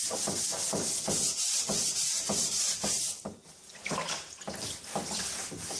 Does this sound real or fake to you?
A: real